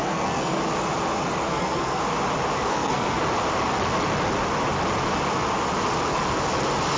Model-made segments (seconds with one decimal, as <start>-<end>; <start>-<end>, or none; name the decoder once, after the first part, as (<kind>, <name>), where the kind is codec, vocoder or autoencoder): 0.0-0.6 (codec, SNAC); 1.5-2.0; 2.7-3.2